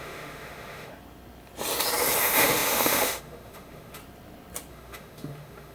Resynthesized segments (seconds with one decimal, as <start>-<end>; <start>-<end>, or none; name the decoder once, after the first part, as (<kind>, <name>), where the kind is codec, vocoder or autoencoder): 0.0-0.9 (autoencoder, DAC-VAE); 2.2-4.0; 4.7-5.7